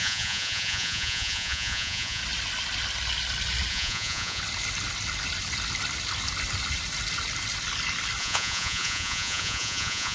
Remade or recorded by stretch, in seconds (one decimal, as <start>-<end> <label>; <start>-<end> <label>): 0.0-2.2 remade; 2.2-3.7 recorded; 3.7-4.4 remade; 4.4-8.2 recorded; 8.2-10.1 remade